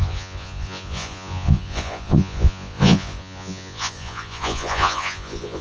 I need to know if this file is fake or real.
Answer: fake